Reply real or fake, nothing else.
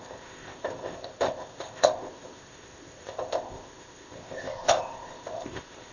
fake